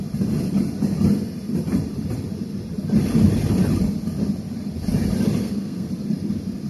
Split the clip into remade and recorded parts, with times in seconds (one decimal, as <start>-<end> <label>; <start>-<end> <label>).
0.0-5.4 recorded; 5.4-5.9 remade; 5.9-6.7 recorded